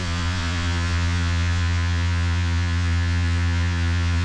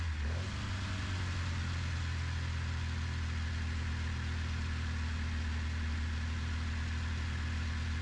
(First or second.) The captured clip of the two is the second